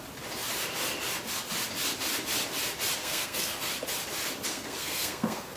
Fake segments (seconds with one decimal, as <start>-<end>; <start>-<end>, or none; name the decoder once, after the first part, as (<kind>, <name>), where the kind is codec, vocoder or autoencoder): 3.0-3.7 (codec, SNAC); 4.5-5.6